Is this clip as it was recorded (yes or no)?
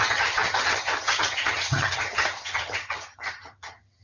no